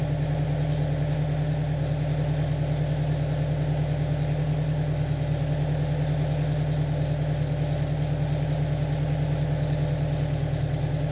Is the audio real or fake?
real